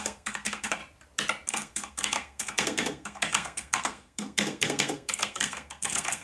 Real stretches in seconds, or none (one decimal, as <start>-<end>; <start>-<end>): 0.8-1.5